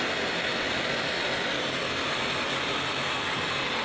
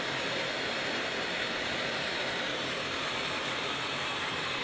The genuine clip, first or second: first